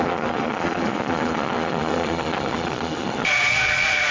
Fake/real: fake